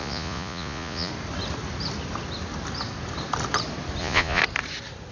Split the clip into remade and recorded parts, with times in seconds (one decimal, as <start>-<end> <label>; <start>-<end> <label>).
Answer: 0.0-1.1 remade; 1.1-4.0 recorded; 4.0-4.4 remade; 4.4-5.1 recorded